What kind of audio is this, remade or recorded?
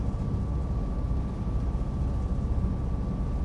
recorded